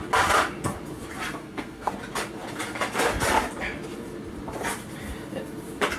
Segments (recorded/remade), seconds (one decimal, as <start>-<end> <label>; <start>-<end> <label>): 0.0-1.4 recorded; 1.4-1.9 remade; 1.9-6.0 recorded